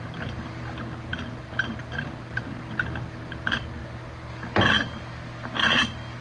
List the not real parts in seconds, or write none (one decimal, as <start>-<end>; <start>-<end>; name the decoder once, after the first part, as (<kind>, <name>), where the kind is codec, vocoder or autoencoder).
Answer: none